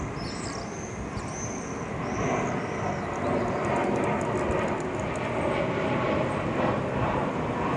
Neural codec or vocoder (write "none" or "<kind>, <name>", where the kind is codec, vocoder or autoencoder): none